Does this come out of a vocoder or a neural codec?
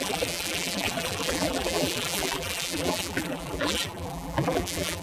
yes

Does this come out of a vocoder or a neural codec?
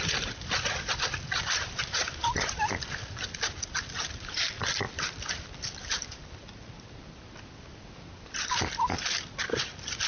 no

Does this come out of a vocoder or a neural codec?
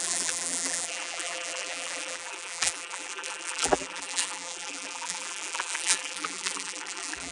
yes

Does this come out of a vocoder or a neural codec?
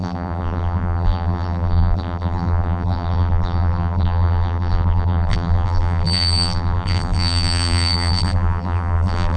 yes